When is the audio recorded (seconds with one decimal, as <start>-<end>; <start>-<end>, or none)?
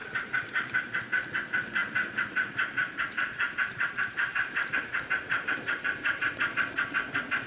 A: 0.9-1.8; 6.3-7.5